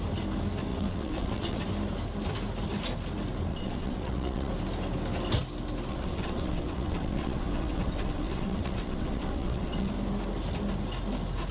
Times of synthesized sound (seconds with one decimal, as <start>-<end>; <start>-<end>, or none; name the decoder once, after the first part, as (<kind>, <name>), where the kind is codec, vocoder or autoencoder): 0.7-1.6 (vocoder, WaveNeXt); 3.5-4.5; 5.9-9.9

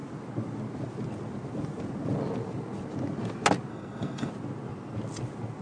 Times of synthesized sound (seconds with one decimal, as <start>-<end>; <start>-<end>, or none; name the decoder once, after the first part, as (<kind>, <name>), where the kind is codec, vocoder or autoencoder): 3.7-4.3 (codec, SNAC)

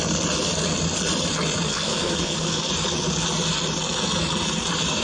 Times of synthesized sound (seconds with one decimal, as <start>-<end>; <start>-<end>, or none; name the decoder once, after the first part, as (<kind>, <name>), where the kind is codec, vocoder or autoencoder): 1.7-2.7 (codec, SNAC)

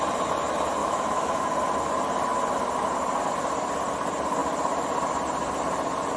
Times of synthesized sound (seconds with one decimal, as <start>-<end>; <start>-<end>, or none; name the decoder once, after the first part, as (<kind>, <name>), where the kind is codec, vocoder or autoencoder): 0.8-1.4 (autoencoder, DAC-VAE)

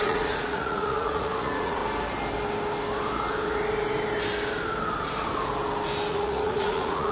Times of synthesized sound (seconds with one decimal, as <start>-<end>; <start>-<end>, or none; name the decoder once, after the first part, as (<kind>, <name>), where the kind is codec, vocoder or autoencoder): 0.0-1.8 (vocoder, Vocos); 6.1-7.1

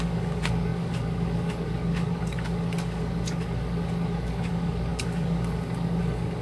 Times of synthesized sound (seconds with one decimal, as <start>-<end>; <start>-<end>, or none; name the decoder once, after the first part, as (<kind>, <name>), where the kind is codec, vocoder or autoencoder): 0.0-6.4 (codec, DAC)